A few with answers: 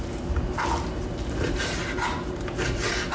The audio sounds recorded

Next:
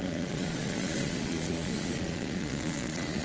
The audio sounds remade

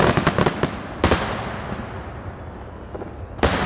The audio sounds recorded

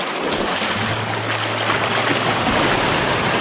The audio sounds recorded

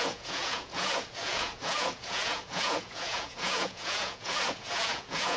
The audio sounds remade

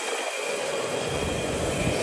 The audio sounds remade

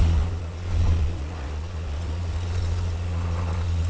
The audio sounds remade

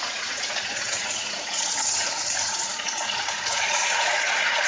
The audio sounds remade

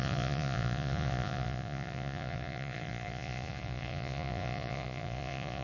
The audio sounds remade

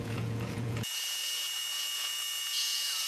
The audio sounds remade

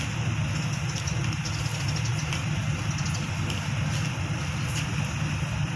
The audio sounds recorded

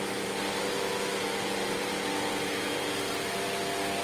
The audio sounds recorded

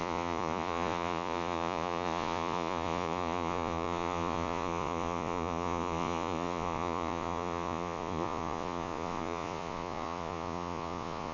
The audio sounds remade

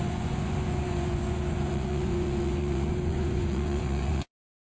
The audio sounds remade